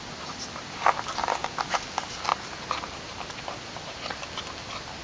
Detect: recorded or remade recorded